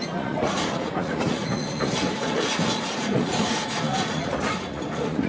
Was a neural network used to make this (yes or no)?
yes